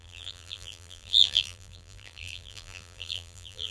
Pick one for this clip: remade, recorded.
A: remade